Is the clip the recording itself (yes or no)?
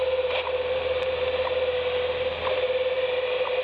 yes